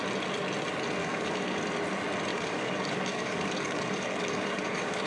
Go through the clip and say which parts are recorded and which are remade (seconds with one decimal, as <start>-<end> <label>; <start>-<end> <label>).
0.0-1.0 recorded; 1.0-1.6 remade; 1.6-2.3 recorded; 2.3-5.1 remade